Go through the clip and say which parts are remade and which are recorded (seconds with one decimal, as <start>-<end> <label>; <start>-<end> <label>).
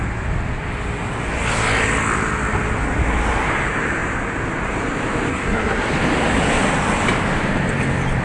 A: 0.0-5.3 recorded; 5.3-5.9 remade; 5.9-8.2 recorded